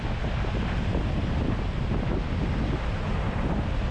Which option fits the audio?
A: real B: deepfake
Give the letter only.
A